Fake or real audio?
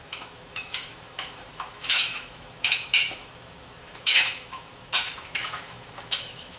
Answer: fake